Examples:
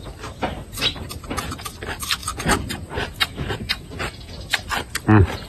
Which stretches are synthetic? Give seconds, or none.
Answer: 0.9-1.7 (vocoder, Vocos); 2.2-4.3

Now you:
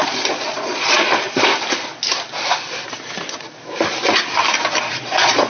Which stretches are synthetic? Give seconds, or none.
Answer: 0.0-1.5 (vocoder, Vocos); 4.8-5.5